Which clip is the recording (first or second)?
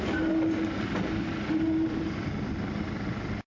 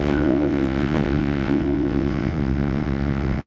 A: first